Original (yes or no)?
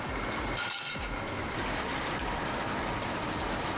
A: yes